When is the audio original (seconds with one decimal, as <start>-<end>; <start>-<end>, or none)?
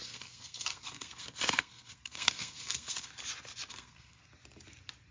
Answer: 3.1-3.7; 4.2-5.1